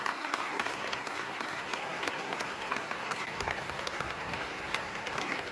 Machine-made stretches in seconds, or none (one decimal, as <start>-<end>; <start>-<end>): 0.0-5.5